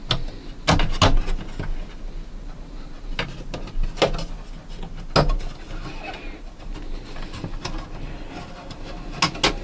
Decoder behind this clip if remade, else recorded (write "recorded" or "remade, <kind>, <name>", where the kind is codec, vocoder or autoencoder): recorded